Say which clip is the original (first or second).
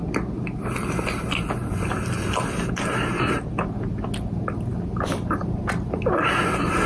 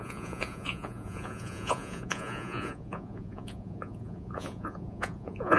first